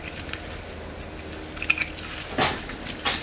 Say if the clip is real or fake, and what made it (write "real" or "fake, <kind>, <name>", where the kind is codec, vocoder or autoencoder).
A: real